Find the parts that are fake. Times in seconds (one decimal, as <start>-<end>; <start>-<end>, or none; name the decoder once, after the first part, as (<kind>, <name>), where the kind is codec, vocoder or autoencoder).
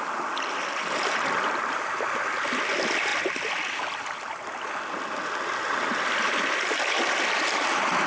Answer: none